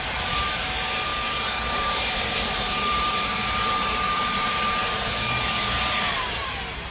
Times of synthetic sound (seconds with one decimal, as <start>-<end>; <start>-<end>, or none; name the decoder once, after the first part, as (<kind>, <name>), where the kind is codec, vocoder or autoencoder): 0.0-1.1 (vocoder, BigVGAN v2); 1.7-6.9